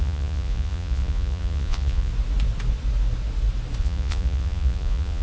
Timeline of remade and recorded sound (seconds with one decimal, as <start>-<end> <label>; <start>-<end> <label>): 0.0-2.1 remade; 2.1-3.8 recorded; 3.8-5.2 remade